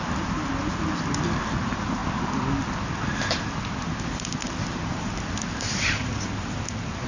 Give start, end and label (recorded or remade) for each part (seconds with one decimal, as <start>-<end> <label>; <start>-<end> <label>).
0.0-7.1 recorded